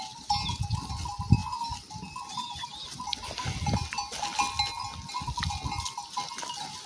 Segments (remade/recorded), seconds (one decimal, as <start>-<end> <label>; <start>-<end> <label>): 0.0-6.9 recorded